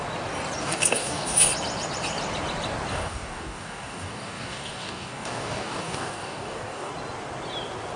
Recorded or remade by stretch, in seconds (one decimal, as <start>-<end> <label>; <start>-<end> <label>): 0.0-0.6 recorded; 0.6-1.5 remade; 1.5-2.9 recorded; 2.9-6.9 remade; 6.9-8.0 recorded